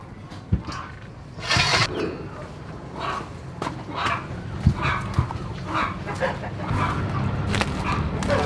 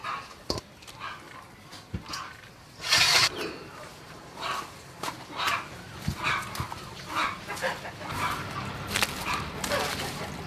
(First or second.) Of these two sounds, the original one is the first